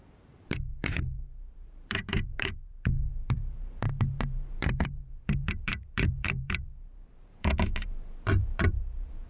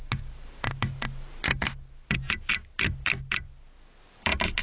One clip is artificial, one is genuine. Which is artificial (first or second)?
first